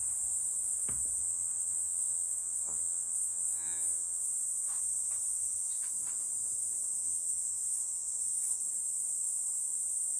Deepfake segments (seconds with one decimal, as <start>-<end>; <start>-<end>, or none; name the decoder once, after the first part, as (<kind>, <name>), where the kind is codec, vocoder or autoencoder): 1.2-4.2 (vocoder, Vocos); 7.0-8.6